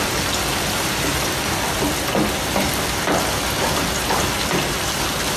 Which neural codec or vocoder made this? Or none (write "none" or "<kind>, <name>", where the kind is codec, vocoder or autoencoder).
none